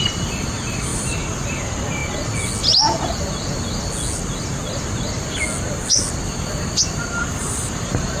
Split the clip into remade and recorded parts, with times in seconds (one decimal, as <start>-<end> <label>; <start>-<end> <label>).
0.0-2.0 remade; 2.0-6.9 recorded; 6.9-8.2 remade